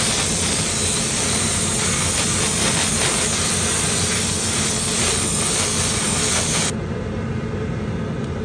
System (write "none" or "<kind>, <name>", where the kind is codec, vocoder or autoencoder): none